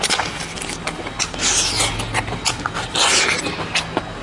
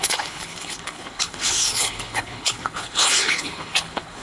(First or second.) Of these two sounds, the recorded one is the first